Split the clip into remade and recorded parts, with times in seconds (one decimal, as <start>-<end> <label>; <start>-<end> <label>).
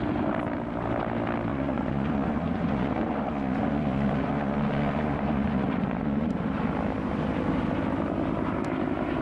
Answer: 0.0-1.5 recorded; 1.5-6.3 remade; 6.3-9.2 recorded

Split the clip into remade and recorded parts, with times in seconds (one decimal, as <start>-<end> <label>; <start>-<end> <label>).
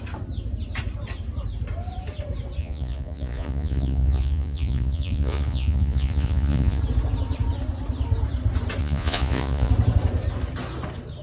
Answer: 0.0-2.6 recorded; 2.6-6.8 remade; 6.8-8.8 recorded; 8.8-9.7 remade; 9.7-11.2 recorded